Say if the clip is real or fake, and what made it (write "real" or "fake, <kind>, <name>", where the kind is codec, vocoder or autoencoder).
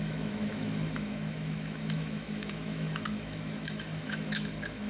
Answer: fake, autoencoder, DAC-VAE